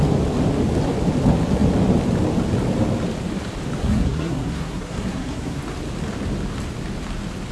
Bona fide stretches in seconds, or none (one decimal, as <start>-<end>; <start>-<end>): 0.0-3.8; 5.6-7.5